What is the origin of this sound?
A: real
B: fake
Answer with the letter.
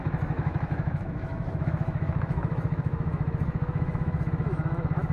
B